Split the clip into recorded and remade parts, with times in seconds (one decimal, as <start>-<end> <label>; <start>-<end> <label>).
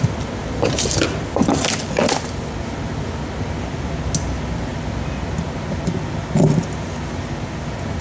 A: 0.0-8.0 recorded